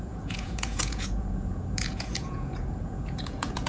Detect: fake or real fake